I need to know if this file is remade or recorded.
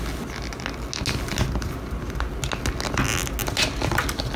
recorded